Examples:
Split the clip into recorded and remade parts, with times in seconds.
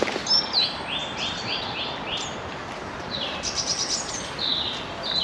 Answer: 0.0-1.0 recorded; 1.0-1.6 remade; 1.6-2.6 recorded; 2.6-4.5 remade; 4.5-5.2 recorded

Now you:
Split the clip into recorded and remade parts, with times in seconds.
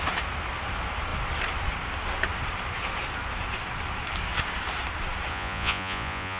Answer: 0.0-5.3 recorded; 5.3-6.4 remade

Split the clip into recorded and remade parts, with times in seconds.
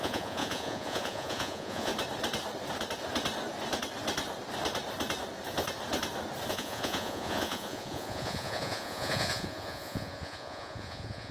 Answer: 0.0-1.9 remade; 1.9-6.5 recorded; 6.5-11.3 remade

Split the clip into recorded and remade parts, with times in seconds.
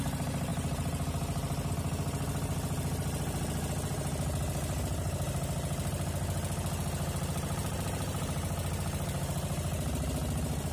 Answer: 0.0-10.7 recorded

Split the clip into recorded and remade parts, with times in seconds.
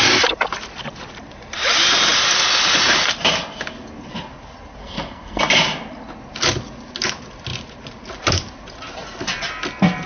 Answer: 0.0-4.8 recorded; 4.8-5.4 remade; 5.4-10.1 recorded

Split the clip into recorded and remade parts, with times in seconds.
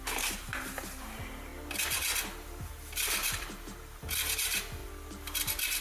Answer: 0.0-1.5 remade; 1.5-2.2 recorded; 2.2-4.8 remade; 4.8-5.8 recorded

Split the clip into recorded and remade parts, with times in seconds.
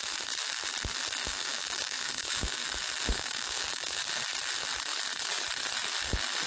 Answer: 0.0-1.2 recorded; 1.2-2.6 remade; 2.6-3.1 recorded; 3.1-4.0 remade; 4.0-6.5 recorded